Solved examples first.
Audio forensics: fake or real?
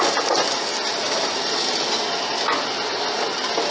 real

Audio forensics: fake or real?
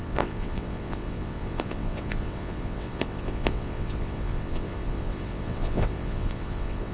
fake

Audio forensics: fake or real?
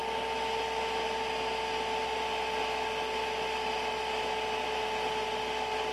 real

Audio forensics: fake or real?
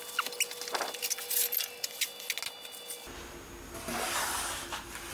real